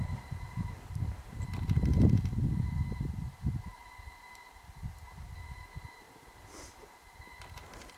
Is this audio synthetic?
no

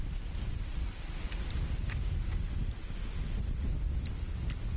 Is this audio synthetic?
no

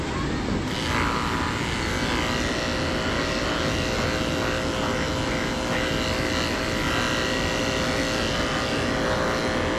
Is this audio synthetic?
no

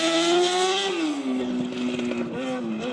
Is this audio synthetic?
no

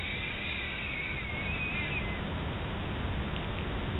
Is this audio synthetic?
no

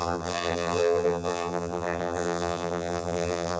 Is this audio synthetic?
yes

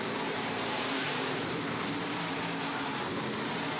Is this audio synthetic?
yes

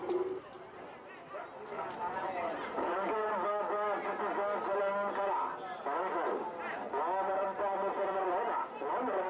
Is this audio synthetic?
no